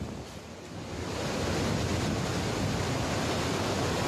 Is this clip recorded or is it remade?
recorded